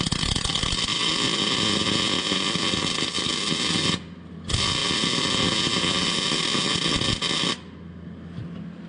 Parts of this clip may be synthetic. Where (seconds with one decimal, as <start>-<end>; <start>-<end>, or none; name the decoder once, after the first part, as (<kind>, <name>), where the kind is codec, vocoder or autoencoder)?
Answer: none